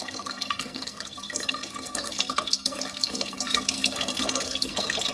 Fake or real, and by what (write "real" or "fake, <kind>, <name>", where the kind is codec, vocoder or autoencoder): fake, codec, SNAC